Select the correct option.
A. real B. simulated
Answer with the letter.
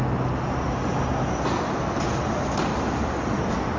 A